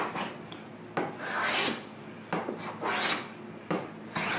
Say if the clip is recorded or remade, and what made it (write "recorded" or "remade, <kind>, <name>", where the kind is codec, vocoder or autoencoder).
recorded